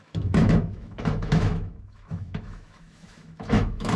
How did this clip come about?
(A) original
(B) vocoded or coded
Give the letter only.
B